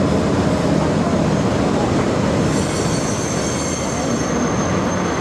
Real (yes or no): yes